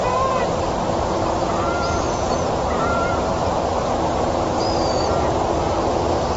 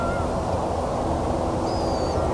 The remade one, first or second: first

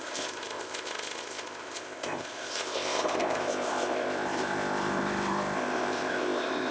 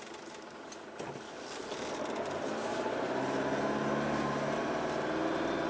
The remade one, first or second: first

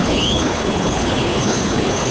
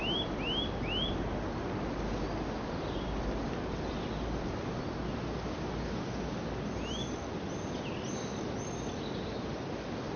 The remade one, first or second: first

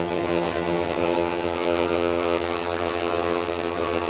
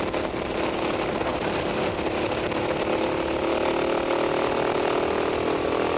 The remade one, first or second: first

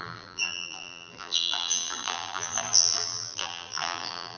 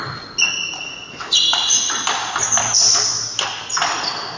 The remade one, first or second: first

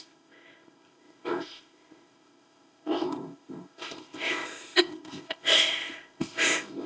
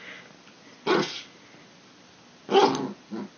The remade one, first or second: first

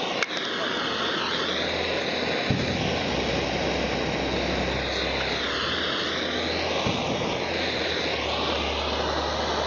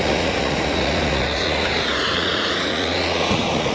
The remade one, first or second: second